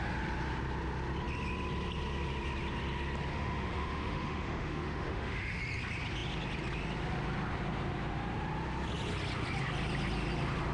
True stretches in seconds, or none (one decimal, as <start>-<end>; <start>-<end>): 0.0-3.3; 5.6-10.7